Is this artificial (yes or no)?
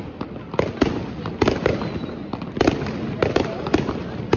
no